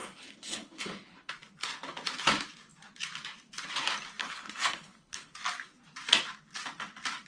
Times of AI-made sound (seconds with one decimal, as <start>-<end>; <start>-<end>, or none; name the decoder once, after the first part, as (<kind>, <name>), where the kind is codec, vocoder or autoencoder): 0.0-1.3 (codec, HILCodec); 4.2-5.3